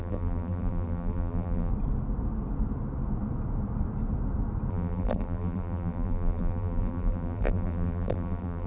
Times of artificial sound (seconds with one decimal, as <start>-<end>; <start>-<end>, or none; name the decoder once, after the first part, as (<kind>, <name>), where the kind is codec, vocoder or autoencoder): 0.0-1.7 (vocoder, BigVGAN v2); 4.7-8.7